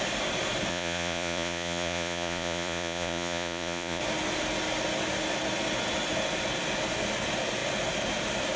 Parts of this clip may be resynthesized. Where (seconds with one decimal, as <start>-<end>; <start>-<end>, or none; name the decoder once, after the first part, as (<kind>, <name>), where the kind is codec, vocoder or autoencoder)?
0.7-4.0 (vocoder, Vocos)